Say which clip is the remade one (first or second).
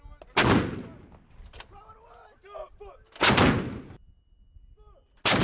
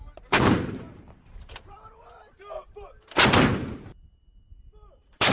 second